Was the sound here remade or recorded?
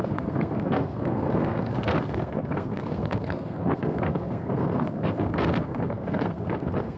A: remade